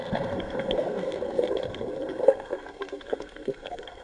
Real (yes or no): no